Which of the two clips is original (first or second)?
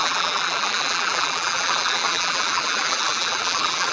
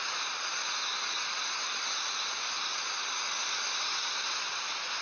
second